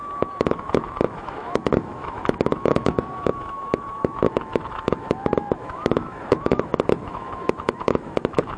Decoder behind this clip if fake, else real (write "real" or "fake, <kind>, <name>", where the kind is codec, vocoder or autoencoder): fake, autoencoder, DAC-VAE